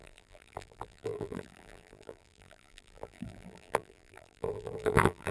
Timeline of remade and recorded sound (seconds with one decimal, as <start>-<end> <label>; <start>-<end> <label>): 0.0-5.3 remade